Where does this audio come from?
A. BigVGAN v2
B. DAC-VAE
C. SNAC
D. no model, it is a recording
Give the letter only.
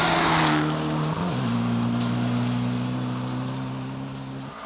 D